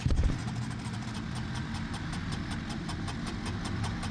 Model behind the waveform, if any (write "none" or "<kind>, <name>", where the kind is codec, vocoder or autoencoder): vocoder, BigVGAN v2